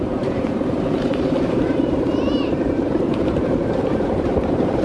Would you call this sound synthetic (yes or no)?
yes